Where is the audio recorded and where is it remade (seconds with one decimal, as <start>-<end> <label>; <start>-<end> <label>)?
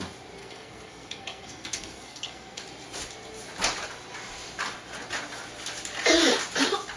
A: 0.0-0.4 recorded; 0.4-2.6 remade; 2.6-7.0 recorded